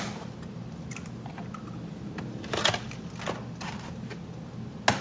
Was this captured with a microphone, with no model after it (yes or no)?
yes